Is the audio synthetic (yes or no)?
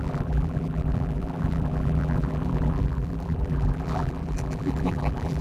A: yes